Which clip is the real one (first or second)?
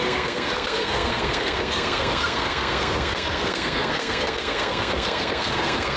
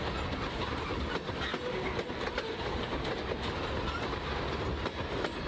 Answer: second